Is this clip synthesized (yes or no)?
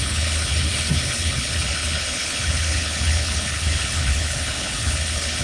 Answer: yes